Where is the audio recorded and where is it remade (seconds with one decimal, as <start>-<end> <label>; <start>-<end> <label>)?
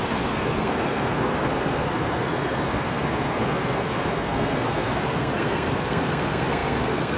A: 0.0-7.2 remade